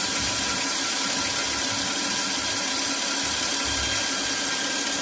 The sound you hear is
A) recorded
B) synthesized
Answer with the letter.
A